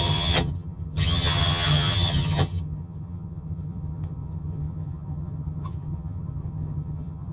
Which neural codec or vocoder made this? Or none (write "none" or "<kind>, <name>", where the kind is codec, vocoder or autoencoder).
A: vocoder, HiFi-GAN